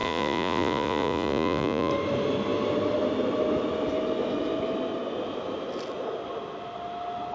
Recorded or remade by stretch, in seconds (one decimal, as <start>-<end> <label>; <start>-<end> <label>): 0.0-1.9 remade; 1.9-7.3 recorded